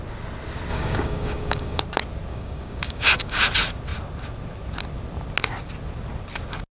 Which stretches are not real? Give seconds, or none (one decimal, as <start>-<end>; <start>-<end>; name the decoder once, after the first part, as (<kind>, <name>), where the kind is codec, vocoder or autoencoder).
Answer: 0.7-1.8 (codec, DAC); 2.3-3.4